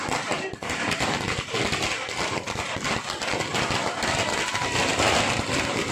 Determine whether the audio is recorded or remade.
recorded